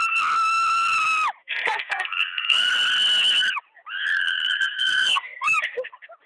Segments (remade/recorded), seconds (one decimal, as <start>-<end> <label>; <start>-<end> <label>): 0.0-1.4 recorded; 1.4-2.7 remade; 2.7-4.1 recorded; 4.1-5.6 remade; 5.6-6.3 recorded